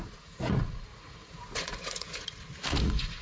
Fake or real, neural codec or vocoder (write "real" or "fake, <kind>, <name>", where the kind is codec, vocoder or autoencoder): fake, vocoder, Vocos